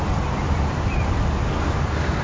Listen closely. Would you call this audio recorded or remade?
recorded